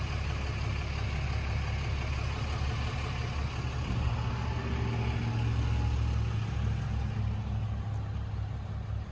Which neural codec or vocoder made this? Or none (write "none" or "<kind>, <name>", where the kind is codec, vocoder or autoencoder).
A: none